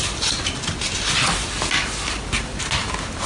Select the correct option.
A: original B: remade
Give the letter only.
A